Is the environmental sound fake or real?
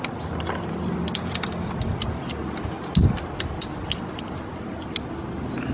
real